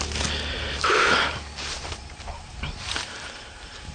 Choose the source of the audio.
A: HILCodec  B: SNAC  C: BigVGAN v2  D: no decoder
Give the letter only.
C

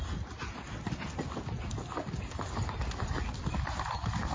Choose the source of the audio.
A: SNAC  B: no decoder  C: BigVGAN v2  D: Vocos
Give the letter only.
B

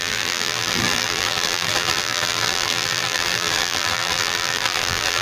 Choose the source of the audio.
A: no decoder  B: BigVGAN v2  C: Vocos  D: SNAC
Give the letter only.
B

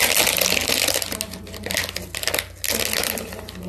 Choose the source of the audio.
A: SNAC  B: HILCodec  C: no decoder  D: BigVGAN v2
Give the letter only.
C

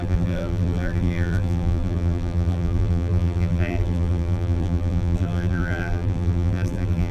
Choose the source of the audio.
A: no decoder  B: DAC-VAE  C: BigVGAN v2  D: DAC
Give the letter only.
C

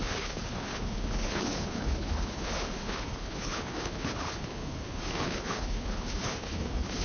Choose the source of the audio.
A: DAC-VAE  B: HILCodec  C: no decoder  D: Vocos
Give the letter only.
B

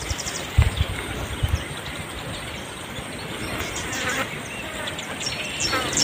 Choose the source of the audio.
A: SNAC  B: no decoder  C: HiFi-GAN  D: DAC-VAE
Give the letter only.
B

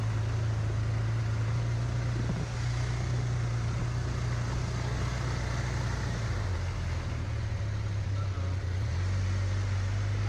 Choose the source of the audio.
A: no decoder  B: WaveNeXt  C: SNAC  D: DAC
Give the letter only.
A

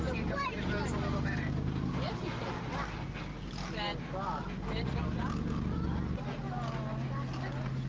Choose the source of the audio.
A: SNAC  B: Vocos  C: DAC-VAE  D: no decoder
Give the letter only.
D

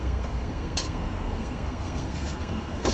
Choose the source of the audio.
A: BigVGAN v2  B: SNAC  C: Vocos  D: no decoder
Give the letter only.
B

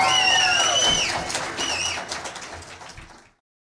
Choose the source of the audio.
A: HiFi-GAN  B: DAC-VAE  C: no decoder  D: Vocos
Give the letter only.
C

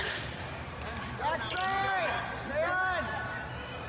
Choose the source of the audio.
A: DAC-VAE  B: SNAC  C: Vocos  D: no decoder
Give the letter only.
D